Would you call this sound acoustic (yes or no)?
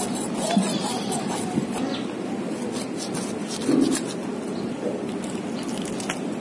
yes